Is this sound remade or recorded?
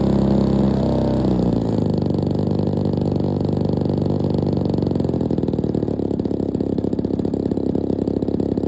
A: recorded